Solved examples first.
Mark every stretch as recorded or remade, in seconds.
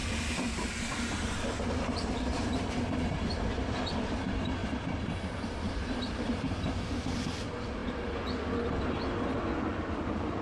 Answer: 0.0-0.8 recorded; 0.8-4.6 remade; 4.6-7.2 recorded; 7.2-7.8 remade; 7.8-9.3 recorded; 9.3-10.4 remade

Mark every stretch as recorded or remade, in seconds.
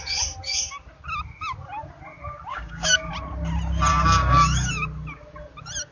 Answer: 0.0-2.5 recorded; 2.5-3.1 remade; 3.1-3.9 recorded; 3.9-4.7 remade; 4.7-5.9 recorded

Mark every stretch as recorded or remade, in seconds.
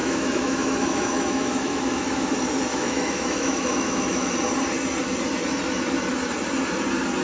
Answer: 0.0-2.3 remade; 2.3-2.7 recorded; 2.7-4.3 remade; 4.3-7.2 recorded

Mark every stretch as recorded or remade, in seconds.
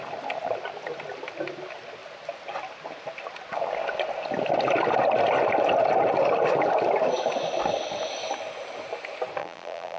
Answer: 0.0-9.4 recorded; 9.4-10.0 remade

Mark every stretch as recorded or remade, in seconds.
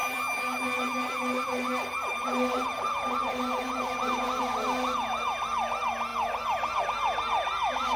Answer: 0.0-4.4 remade; 4.4-8.0 recorded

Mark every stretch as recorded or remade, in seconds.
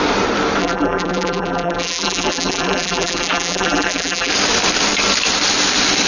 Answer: 0.0-0.6 recorded; 0.6-4.3 remade; 4.3-6.1 recorded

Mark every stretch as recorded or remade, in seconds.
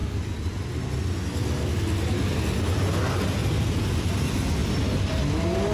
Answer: 0.0-5.7 recorded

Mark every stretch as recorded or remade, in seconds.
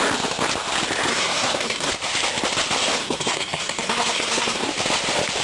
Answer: 0.0-1.1 recorded; 1.1-1.9 remade; 1.9-3.0 recorded; 3.0-4.7 remade; 4.7-5.4 recorded